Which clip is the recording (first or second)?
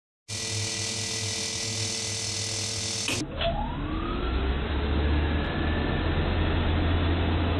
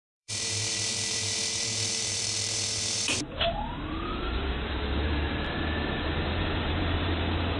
first